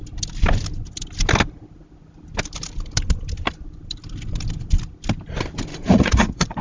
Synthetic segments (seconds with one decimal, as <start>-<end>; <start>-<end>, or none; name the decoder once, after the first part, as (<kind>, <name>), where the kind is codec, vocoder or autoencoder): 5.7-6.6 (vocoder, Vocos)